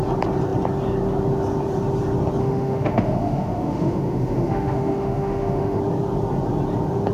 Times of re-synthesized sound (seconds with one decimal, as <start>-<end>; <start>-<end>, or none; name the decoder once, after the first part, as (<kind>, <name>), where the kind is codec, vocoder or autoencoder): 2.4-5.8 (autoencoder, DAC-VAE)